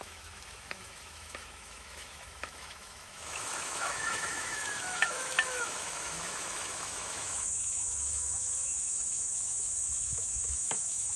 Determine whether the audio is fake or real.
fake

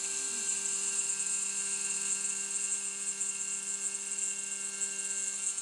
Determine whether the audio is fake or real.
real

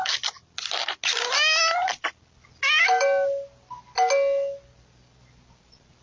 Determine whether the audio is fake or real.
real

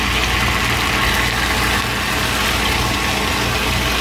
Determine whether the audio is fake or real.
real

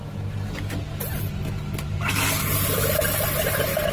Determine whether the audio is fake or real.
real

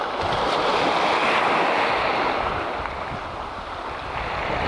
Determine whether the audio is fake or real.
real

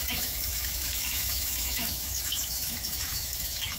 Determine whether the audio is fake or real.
fake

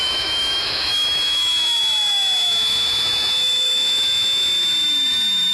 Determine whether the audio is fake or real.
fake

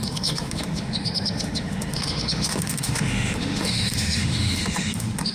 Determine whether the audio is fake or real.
fake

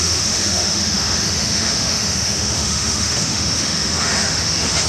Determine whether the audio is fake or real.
fake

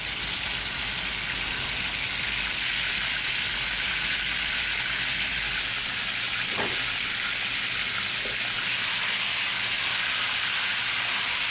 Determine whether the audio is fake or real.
real